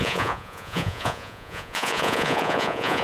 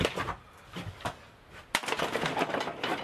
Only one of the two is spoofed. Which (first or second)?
first